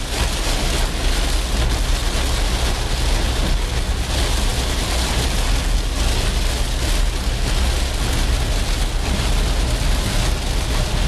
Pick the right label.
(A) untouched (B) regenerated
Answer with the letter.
A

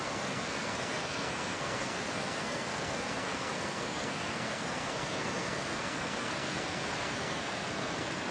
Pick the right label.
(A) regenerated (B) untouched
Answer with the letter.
A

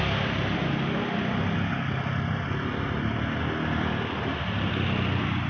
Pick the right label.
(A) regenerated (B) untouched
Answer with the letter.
B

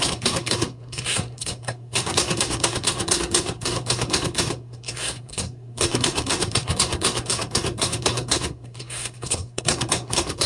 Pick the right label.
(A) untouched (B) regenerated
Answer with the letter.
B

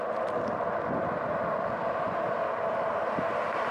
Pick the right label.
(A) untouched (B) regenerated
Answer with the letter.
A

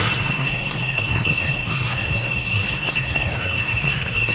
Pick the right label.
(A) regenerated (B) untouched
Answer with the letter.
A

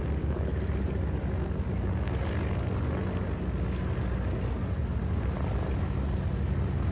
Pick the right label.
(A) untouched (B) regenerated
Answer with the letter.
A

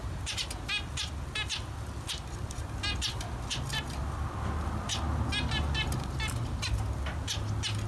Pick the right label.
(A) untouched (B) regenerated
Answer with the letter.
A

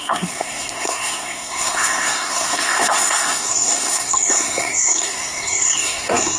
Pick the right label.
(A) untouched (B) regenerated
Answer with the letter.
B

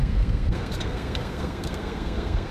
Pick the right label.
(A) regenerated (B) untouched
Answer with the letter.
A